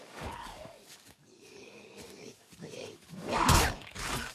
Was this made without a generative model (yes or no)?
no